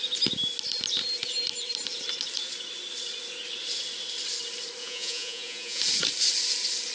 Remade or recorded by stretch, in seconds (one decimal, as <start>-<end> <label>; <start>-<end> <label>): 0.0-4.8 recorded; 4.8-5.8 remade; 5.8-6.9 recorded